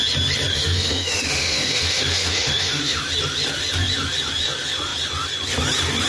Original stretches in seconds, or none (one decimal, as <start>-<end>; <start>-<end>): 0.0-0.5; 3.0-6.1